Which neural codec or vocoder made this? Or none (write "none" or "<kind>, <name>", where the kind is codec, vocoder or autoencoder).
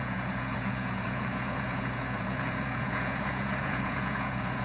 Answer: vocoder, Vocos